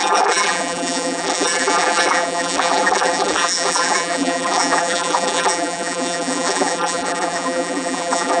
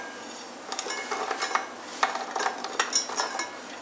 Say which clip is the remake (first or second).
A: first